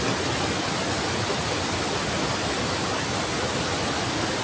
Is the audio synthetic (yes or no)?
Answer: no